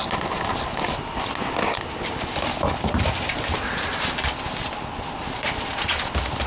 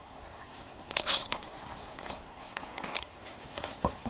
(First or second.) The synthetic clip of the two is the second